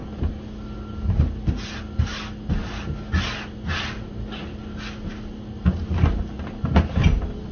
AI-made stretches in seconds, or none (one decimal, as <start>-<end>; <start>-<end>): none